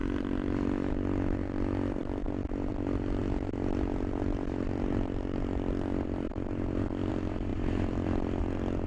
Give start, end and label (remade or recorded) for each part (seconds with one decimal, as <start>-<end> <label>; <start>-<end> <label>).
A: 0.0-0.9 remade; 0.9-2.0 recorded; 2.0-2.7 remade; 2.7-3.2 recorded; 3.2-7.1 remade; 7.1-7.5 recorded; 7.5-8.4 remade; 8.4-8.9 recorded